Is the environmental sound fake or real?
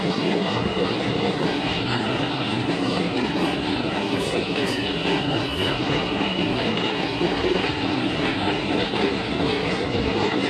fake